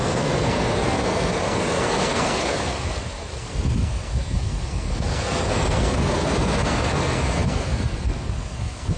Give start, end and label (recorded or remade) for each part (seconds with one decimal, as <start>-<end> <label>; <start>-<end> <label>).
0.0-9.0 remade